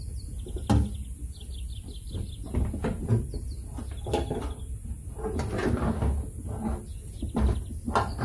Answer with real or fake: real